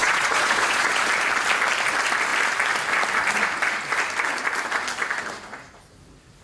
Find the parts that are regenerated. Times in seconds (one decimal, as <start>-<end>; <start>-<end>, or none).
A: 0.0-0.9